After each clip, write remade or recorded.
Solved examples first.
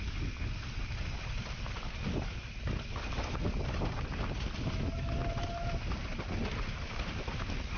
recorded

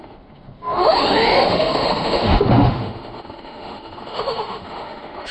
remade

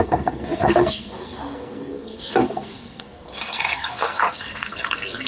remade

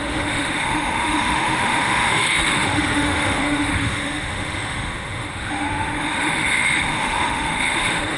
remade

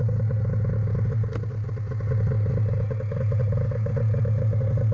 recorded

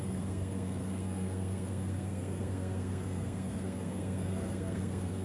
remade